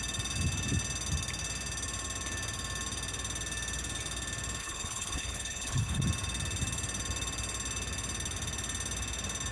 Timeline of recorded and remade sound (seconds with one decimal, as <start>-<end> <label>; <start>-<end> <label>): 0.0-4.6 recorded; 4.6-6.0 remade; 6.0-9.5 recorded